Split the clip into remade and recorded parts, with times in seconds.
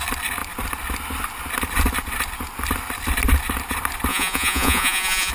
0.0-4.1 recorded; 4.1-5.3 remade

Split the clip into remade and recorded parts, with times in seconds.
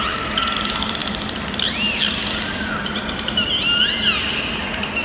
0.0-5.0 recorded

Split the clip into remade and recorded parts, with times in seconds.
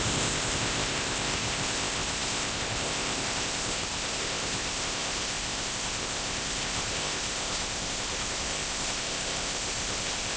0.0-10.4 remade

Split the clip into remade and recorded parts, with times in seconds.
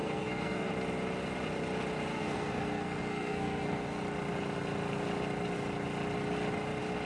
0.0-0.7 remade; 0.7-2.1 recorded; 2.1-4.0 remade; 4.0-7.1 recorded